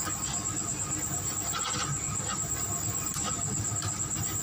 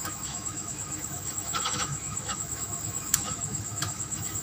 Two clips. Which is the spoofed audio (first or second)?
second